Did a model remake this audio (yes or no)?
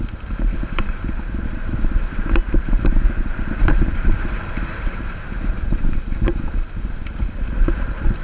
yes